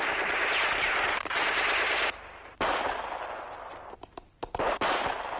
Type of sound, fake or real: real